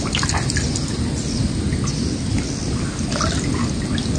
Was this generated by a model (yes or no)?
no